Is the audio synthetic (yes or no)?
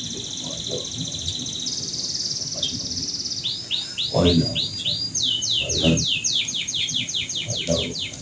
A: no